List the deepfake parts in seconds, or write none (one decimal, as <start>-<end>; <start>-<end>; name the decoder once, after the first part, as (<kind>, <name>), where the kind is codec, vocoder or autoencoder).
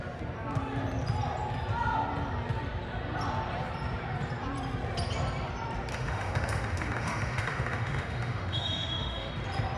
5.9-9.3 (autoencoder, DAC-VAE)